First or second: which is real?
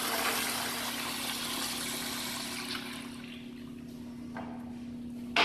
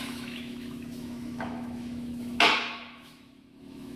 first